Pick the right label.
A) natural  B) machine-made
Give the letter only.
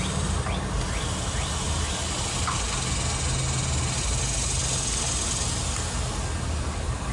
A